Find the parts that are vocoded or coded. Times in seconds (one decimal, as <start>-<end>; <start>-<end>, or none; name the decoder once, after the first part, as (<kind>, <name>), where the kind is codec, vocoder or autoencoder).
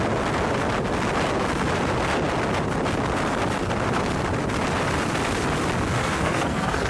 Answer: 6.0-6.9 (codec, SNAC)